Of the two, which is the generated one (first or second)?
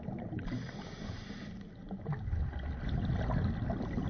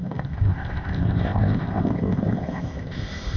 second